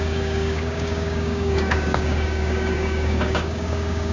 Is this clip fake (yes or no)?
yes